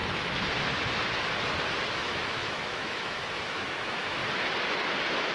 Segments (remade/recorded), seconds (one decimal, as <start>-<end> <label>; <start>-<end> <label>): 0.0-1.9 recorded; 1.9-4.2 remade; 4.2-5.3 recorded